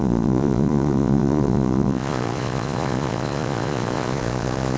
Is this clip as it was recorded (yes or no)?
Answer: no